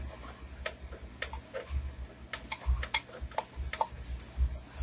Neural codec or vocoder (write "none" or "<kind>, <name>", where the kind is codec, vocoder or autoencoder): none